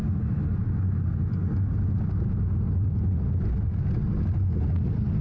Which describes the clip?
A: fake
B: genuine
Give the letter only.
B